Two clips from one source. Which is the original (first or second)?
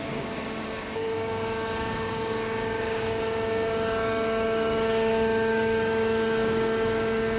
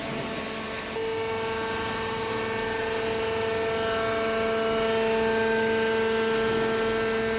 second